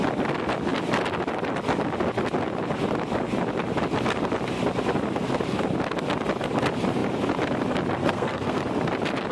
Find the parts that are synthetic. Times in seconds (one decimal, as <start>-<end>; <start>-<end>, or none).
8.0-8.6